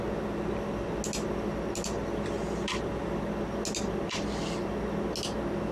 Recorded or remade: recorded